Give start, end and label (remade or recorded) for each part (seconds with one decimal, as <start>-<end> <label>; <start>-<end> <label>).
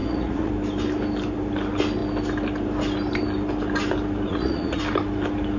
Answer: 0.0-0.5 remade; 0.5-4.3 recorded; 4.3-4.8 remade; 4.8-5.6 recorded